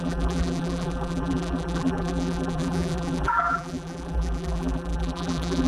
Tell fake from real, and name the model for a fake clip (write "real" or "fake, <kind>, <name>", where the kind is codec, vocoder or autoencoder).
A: fake, vocoder, BigVGAN v2